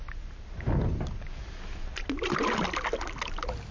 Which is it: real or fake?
real